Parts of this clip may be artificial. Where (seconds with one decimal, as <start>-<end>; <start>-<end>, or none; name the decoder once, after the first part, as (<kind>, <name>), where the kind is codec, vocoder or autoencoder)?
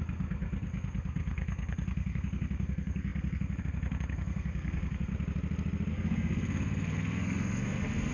0.0-5.1 (codec, SNAC); 5.9-8.1